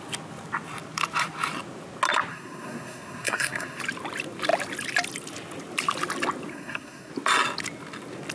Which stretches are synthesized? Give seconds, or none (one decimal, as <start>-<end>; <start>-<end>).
2.3-3.8; 6.5-7.1